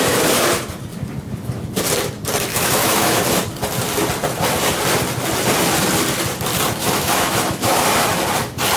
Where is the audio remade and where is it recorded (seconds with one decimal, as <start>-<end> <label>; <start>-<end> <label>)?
0.0-2.5 recorded; 2.5-3.2 remade; 3.2-6.8 recorded; 6.8-7.7 remade; 7.7-8.8 recorded

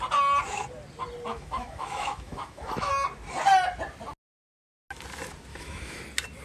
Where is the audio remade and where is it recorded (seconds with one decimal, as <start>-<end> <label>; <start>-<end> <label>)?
0.0-1.3 recorded; 1.3-2.9 remade; 2.9-5.5 recorded; 5.5-6.0 remade; 6.0-6.4 recorded

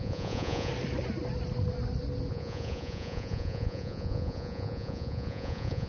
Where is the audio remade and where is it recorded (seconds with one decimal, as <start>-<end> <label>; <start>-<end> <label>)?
0.0-0.7 remade; 0.7-2.3 recorded; 2.3-5.9 remade

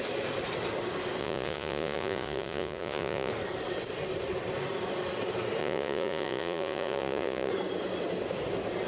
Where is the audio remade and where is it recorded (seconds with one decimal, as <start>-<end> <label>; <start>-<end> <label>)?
0.0-1.2 recorded; 1.2-3.3 remade; 3.3-5.6 recorded; 5.6-7.5 remade; 7.5-8.9 recorded